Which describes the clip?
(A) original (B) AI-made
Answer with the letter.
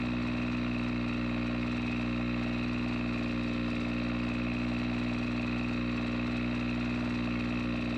A